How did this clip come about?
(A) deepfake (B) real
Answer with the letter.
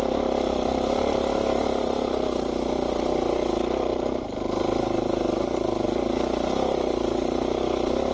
B